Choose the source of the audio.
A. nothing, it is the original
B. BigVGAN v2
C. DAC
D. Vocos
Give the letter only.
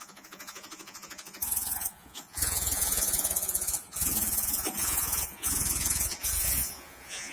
D